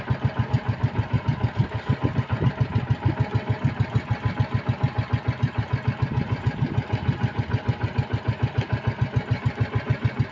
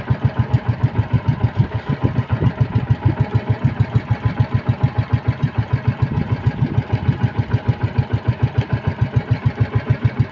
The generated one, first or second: second